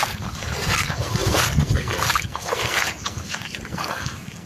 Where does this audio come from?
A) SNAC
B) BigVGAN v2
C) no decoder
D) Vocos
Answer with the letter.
A